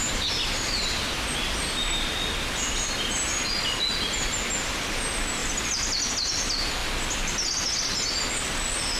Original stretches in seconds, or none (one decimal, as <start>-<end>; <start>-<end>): 0.0-9.0